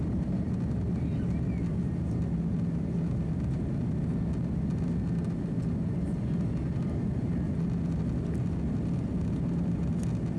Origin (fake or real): real